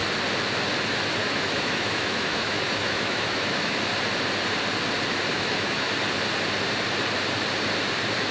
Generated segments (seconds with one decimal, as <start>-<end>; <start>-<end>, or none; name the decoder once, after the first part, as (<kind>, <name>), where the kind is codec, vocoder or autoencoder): 1.2-3.8 (autoencoder, DAC-VAE); 5.3-5.9